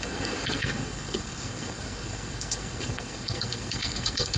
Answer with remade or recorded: remade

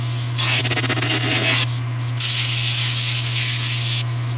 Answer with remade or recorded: recorded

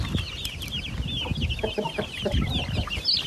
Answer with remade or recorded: recorded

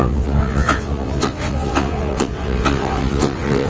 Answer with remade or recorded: remade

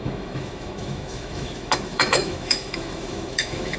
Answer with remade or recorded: remade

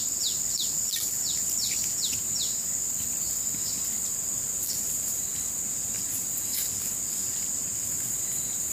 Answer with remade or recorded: recorded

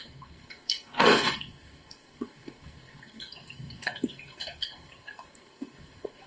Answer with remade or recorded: remade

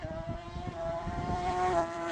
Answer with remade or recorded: remade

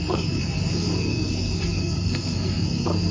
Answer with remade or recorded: remade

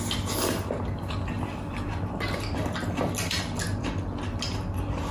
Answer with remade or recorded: recorded